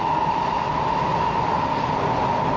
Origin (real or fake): real